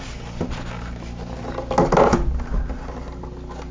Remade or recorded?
recorded